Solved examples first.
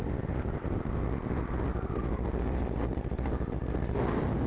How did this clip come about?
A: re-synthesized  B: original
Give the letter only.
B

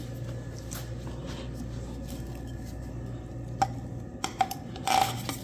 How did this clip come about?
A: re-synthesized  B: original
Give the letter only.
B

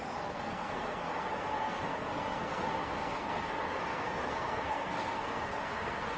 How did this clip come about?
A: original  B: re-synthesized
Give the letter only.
B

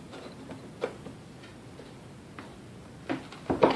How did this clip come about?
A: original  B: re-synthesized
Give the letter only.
A